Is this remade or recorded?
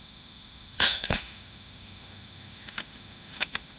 remade